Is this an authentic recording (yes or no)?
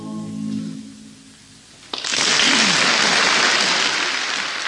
yes